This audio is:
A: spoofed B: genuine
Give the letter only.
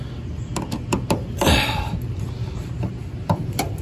B